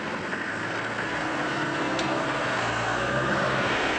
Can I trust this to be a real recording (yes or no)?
no